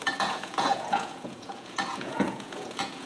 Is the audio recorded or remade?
remade